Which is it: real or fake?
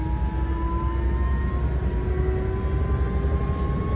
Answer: real